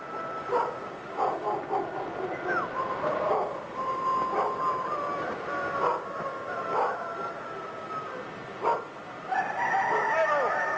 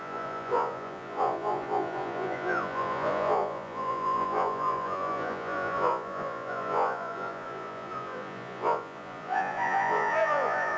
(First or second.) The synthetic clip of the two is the second